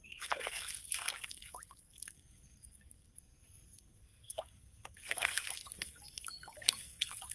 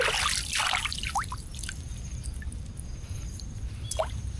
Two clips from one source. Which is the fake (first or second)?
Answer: first